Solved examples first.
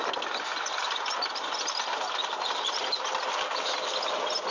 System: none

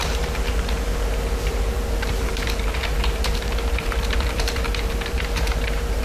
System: vocoder, BigVGAN v2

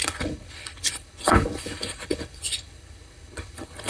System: codec, HILCodec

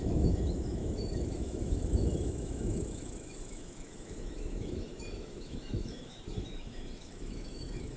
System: autoencoder, DAC-VAE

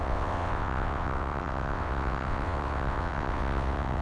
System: vocoder, WaveNeXt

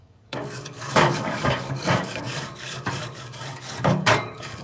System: codec, DAC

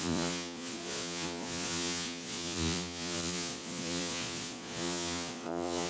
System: vocoder, Vocos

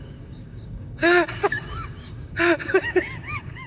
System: codec, DAC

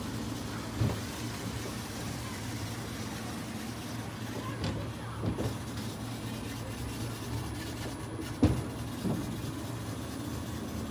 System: none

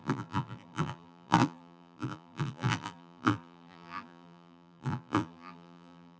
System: vocoder, BigVGAN v2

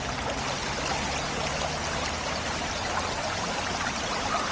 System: none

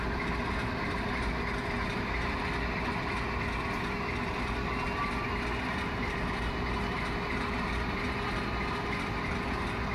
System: none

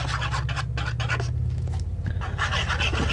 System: none